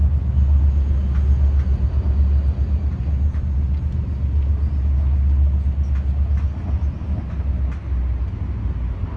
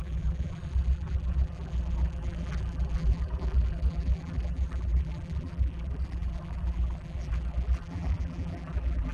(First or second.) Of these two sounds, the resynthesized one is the second